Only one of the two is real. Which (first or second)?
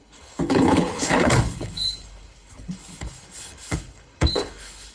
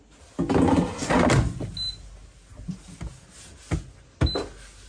second